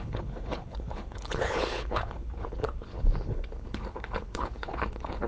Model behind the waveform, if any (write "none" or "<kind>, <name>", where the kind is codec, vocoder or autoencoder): codec, HILCodec